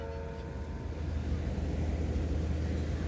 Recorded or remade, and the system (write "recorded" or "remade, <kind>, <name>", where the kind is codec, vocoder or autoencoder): recorded